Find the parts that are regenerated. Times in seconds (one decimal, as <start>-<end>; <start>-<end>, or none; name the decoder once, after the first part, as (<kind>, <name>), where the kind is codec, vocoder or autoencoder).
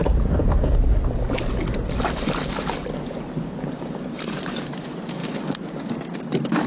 none